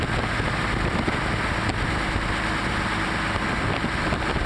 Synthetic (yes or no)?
no